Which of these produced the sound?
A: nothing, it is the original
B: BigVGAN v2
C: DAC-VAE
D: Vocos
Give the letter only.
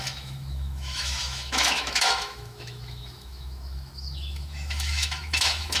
C